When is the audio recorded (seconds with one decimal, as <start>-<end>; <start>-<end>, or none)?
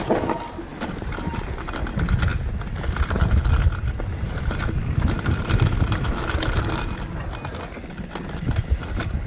0.0-9.3